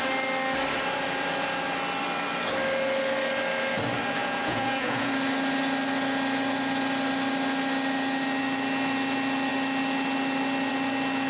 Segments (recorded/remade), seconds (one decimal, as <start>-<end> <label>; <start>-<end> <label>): 0.0-4.2 recorded; 4.2-5.1 remade; 5.1-11.3 recorded